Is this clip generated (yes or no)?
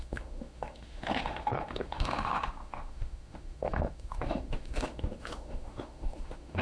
yes